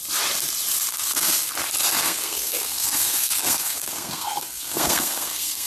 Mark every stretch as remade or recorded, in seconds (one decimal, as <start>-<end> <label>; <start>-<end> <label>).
0.0-0.9 recorded; 0.9-1.5 remade; 1.5-2.0 recorded; 2.0-5.7 remade